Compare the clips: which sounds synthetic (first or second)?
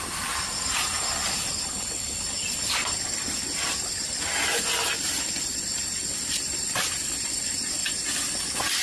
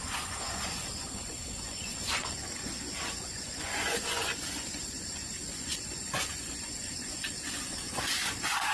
second